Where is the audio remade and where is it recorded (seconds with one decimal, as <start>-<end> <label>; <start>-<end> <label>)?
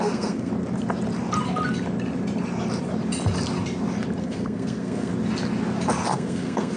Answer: 0.0-0.5 remade; 0.5-4.2 recorded; 4.2-5.1 remade; 5.1-6.1 recorded; 6.1-6.8 remade